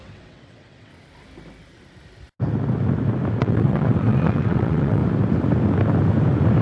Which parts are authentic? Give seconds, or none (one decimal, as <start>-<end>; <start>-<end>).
0.9-3.4; 5.0-6.6